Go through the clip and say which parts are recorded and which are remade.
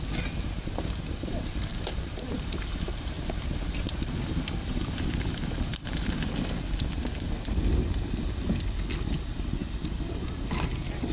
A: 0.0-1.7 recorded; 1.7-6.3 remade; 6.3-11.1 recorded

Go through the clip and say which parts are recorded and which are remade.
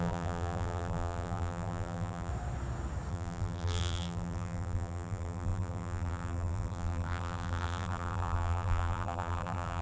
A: 0.0-2.3 remade; 2.3-3.1 recorded; 3.1-9.8 remade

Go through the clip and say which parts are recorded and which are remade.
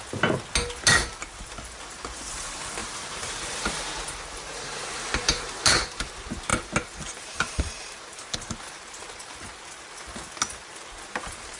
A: 0.0-2.8 recorded; 2.8-6.1 remade; 6.1-6.5 recorded; 6.5-8.3 remade; 8.3-11.6 recorded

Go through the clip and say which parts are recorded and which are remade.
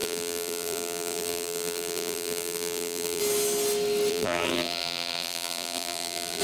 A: 0.0-3.2 remade; 3.2-4.1 recorded; 4.1-6.4 remade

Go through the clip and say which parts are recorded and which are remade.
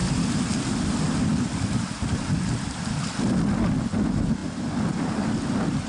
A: 0.0-3.5 remade; 3.5-5.9 recorded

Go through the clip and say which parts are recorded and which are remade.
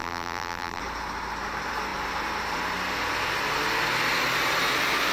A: 0.0-0.8 remade; 0.8-5.1 recorded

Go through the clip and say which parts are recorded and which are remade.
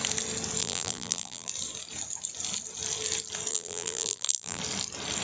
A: 0.0-0.6 recorded; 0.6-1.5 remade; 1.5-3.5 recorded; 3.5-4.6 remade; 4.6-5.2 recorded